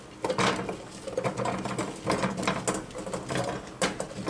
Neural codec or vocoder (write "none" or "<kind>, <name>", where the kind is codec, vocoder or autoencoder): none